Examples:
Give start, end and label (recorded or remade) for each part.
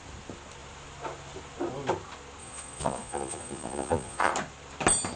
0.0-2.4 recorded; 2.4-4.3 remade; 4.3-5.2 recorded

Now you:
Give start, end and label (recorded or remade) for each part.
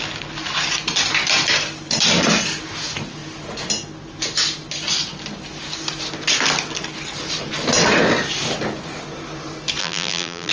0.0-9.8 recorded; 9.8-10.5 remade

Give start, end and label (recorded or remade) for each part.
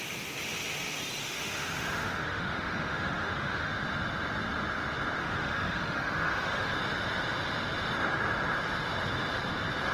0.0-1.2 recorded; 1.2-3.7 remade; 3.7-5.2 recorded; 5.2-6.7 remade; 6.7-9.9 recorded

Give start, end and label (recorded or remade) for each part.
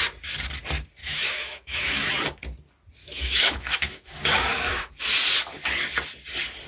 0.0-1.0 recorded; 1.0-2.1 remade; 2.1-3.0 recorded; 3.0-4.9 remade; 4.9-6.7 recorded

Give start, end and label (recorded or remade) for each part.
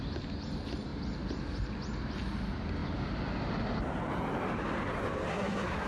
0.0-5.3 recorded; 5.3-5.9 remade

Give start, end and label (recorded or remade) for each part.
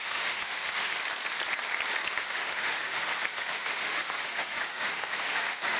0.0-1.0 remade; 1.0-2.2 recorded; 2.2-5.8 remade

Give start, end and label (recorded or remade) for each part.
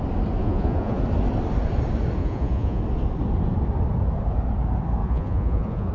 0.0-0.4 recorded; 0.4-1.0 remade; 1.0-2.2 recorded; 2.2-2.8 remade; 2.8-5.0 recorded; 5.0-5.9 remade